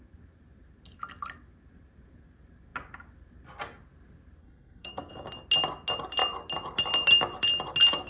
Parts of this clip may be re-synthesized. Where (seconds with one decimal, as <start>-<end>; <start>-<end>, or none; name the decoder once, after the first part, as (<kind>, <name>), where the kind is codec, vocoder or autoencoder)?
4.4-5.1 (codec, SNAC)